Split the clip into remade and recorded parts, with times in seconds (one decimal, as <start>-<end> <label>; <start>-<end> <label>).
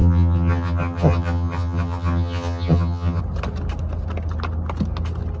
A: 0.0-3.2 remade; 3.2-5.4 recorded